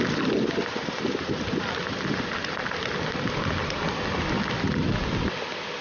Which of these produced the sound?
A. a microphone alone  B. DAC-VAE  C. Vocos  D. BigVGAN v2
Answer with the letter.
A